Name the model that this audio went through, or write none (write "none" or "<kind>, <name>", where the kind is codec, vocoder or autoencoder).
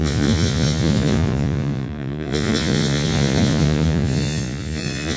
vocoder, Vocos